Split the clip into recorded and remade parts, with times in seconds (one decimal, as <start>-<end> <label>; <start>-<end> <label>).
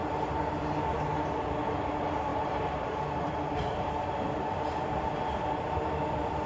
0.0-0.6 remade; 0.6-2.3 recorded; 2.3-4.8 remade; 4.8-6.5 recorded